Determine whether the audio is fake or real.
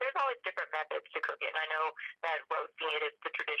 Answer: real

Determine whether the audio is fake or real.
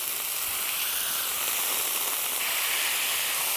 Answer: real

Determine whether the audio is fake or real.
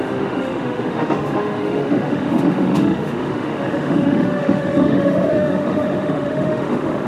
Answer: fake